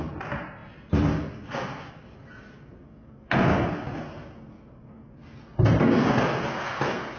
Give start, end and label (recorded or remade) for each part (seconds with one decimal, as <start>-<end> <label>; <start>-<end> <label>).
0.0-7.2 recorded